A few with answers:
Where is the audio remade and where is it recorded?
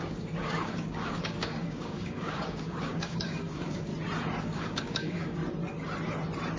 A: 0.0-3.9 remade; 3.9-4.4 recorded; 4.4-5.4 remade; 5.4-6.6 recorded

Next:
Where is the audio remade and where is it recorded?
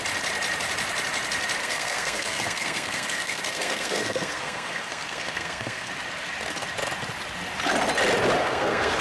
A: 0.0-1.6 recorded; 1.6-5.9 remade; 5.9-8.4 recorded; 8.4-9.0 remade